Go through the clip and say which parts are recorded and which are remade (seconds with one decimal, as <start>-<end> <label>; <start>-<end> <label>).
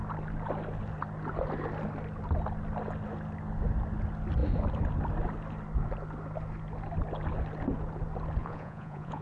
0.0-8.4 recorded; 8.4-9.2 remade